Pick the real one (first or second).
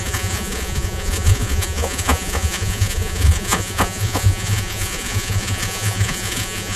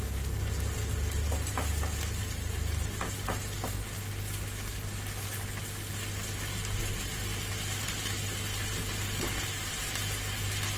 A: second